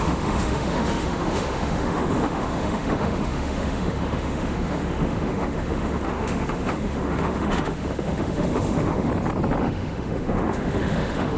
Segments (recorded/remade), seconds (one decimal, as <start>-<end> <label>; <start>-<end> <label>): 0.0-9.1 remade; 9.1-9.6 recorded; 9.6-11.4 remade